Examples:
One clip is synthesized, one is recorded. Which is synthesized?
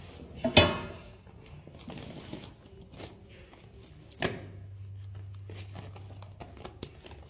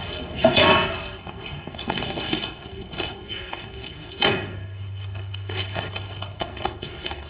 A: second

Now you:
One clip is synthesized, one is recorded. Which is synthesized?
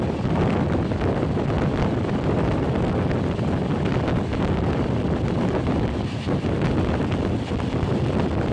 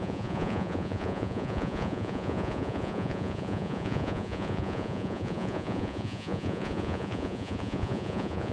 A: second